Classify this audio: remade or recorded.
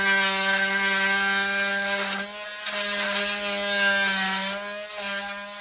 recorded